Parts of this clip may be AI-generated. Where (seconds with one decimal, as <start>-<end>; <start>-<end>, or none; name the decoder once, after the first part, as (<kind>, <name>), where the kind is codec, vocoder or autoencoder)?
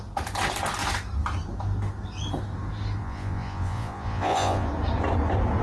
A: 3.0-4.7 (vocoder, Vocos)